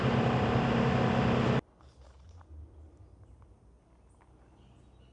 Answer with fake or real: real